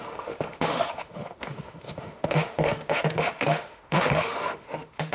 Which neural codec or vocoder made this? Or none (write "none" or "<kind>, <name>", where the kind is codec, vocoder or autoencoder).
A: autoencoder, DAC-VAE